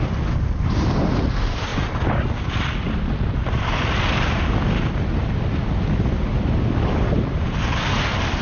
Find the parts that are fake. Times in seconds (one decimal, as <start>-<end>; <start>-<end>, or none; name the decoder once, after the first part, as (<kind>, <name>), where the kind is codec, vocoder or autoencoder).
none

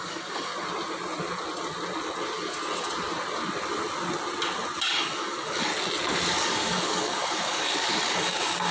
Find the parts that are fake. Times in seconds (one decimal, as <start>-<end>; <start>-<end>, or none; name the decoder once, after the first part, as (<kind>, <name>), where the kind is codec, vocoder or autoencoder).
0.0-0.5 (codec, DAC); 4.8-5.7; 6.4-8.7

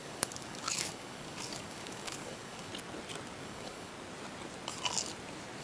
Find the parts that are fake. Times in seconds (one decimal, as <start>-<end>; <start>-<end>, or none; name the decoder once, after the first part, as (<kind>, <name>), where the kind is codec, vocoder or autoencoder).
0.0-2.7 (codec, DAC); 3.4-3.9

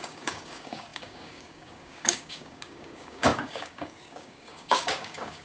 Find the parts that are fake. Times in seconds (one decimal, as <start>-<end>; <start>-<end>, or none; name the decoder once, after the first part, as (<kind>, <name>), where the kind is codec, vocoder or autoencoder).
0.0-5.4 (codec, DAC)